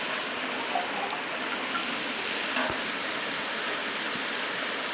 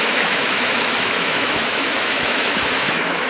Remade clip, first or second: second